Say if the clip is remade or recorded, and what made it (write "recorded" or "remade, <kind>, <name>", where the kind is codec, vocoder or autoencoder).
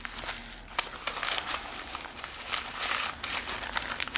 recorded